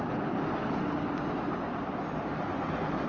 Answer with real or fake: real